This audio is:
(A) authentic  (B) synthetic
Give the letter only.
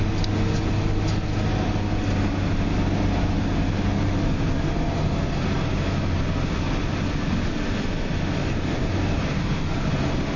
A